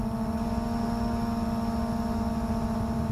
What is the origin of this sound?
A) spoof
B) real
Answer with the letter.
B